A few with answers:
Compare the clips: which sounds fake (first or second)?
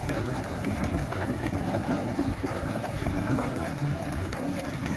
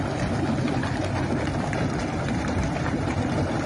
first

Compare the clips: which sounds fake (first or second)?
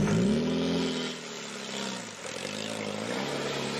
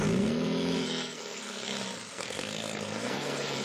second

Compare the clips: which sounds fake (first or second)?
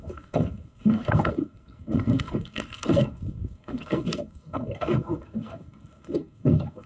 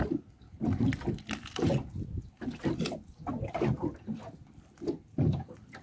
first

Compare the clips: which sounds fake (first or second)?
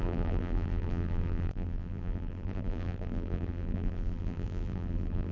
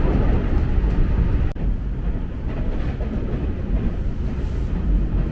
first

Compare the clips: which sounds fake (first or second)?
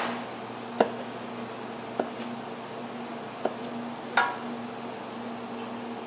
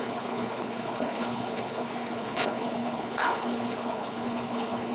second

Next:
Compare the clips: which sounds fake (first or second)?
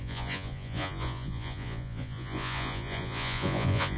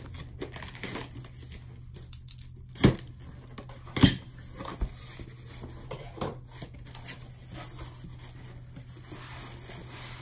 first